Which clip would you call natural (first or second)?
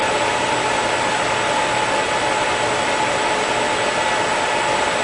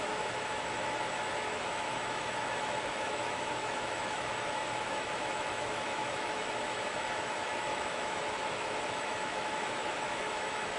first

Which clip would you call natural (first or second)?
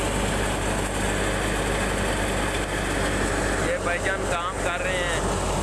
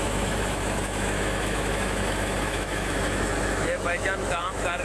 first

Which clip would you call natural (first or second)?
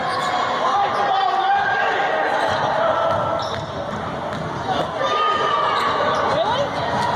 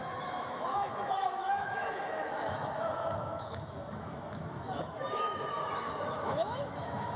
first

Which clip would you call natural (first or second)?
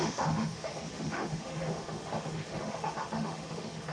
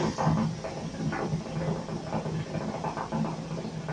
second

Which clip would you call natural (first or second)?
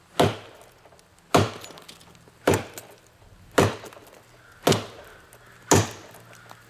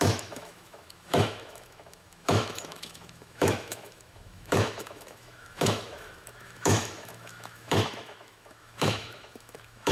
first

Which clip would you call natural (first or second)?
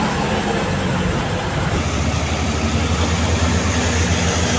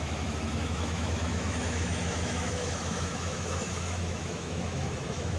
first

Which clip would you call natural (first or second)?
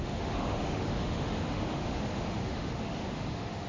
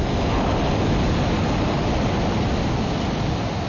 second